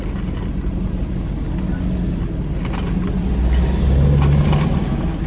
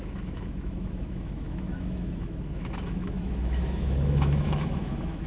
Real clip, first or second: first